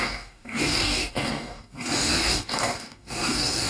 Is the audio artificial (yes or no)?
yes